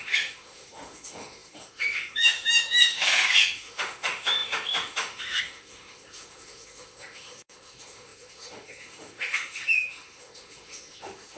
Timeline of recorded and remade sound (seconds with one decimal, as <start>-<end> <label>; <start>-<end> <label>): 0.0-11.4 remade